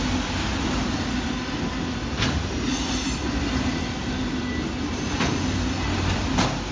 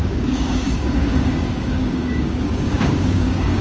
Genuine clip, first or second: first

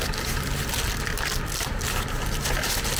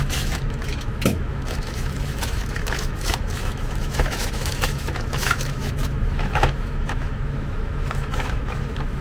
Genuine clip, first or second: first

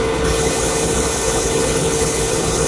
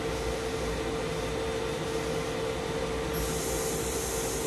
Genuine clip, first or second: second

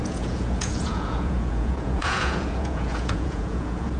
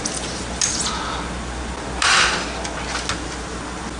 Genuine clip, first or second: second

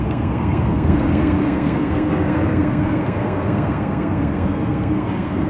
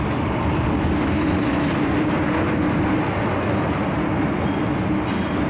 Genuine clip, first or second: second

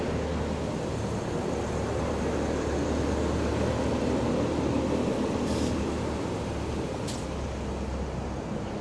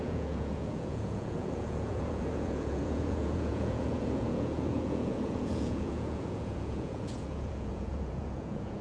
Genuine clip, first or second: first